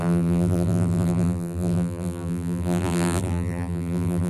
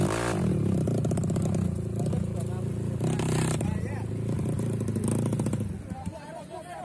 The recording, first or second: second